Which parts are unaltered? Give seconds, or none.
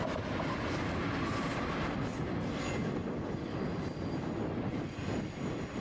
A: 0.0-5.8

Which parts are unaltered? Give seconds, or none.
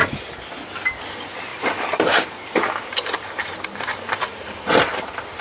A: 0.0-1.5; 4.7-5.4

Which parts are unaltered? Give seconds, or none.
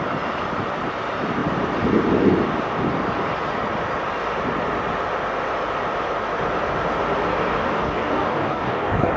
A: 0.0-7.5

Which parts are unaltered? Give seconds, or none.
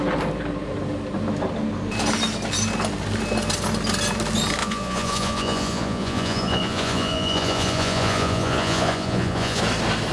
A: 0.0-4.6; 9.6-10.1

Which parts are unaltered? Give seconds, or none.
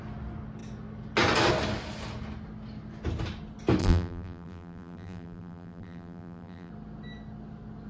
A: 0.0-3.8; 6.7-7.9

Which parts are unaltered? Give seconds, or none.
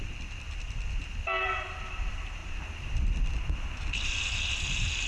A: 0.0-5.1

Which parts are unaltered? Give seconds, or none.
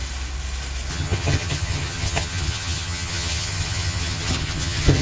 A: 0.0-0.9